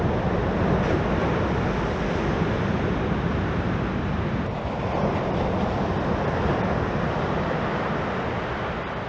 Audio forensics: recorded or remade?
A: recorded